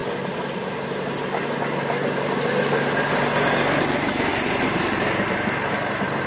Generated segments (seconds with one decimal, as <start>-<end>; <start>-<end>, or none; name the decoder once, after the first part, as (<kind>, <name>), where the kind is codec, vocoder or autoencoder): 4.3-5.7 (vocoder, BigVGAN v2)